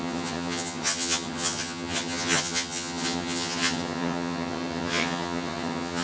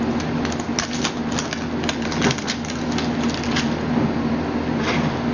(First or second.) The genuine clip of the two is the second